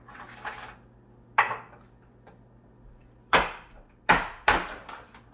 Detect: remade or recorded recorded